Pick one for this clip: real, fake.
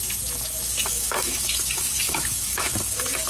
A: fake